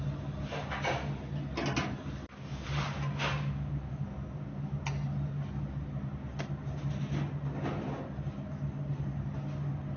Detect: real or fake real